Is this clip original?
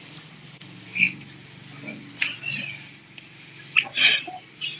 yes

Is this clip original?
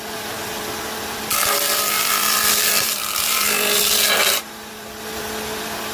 yes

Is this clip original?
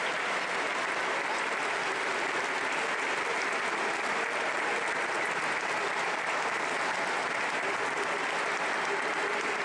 yes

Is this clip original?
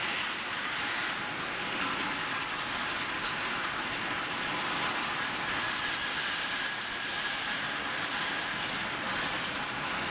yes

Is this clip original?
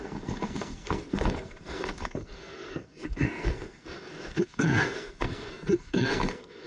no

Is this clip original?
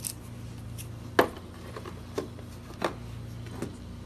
yes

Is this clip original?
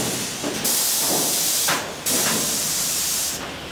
yes